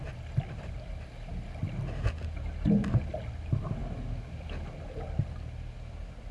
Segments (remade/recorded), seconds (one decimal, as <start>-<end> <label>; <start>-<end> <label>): 0.0-6.3 recorded